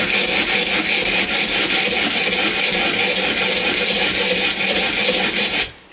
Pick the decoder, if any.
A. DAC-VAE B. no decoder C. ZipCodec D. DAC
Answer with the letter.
B